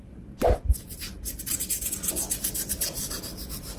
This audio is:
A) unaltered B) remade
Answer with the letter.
A